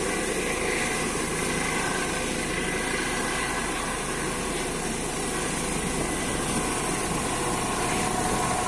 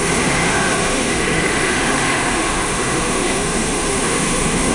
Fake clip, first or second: second